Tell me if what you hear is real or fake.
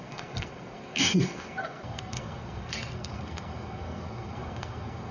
fake